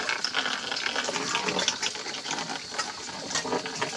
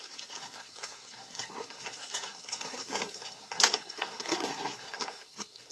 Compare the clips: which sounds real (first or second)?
first